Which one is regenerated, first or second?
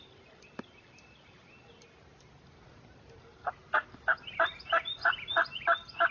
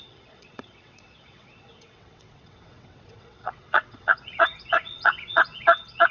second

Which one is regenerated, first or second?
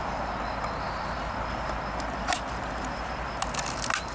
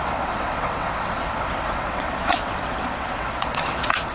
second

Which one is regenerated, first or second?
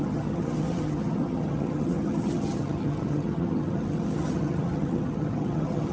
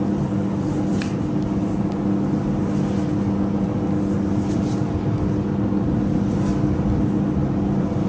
first